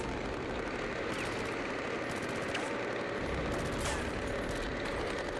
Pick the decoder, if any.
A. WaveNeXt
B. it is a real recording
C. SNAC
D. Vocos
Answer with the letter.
B